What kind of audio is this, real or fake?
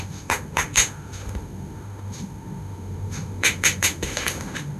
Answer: fake